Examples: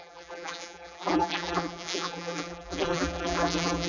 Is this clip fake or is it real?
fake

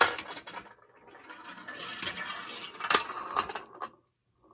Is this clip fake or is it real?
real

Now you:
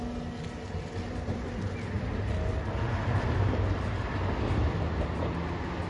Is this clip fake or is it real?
real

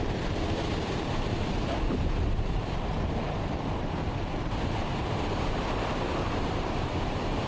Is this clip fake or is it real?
fake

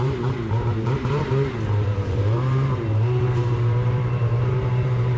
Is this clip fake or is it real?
fake